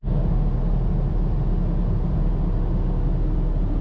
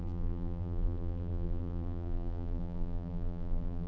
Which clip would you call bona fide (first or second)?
first